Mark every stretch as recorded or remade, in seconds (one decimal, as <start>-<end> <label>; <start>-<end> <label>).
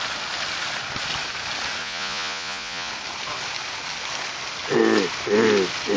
0.0-1.8 recorded; 1.8-2.9 remade; 2.9-6.0 recorded